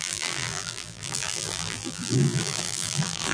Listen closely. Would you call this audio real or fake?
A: fake